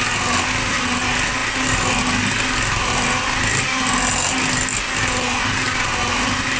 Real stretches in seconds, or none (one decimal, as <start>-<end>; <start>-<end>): 0.0-6.6